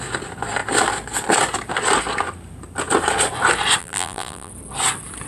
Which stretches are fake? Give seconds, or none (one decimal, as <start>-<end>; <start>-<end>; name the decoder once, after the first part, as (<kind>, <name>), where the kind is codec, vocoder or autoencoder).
3.8-4.5 (vocoder, BigVGAN v2)